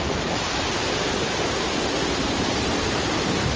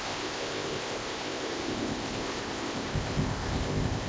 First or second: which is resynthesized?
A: second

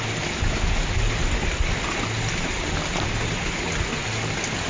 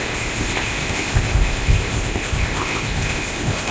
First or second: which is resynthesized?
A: second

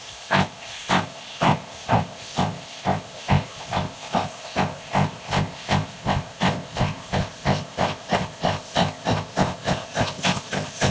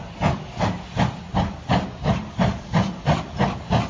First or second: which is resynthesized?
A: first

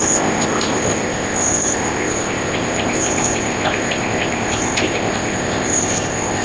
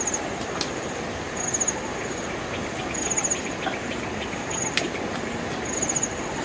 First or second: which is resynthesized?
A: first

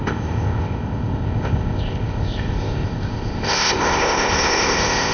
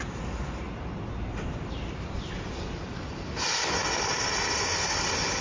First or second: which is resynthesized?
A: first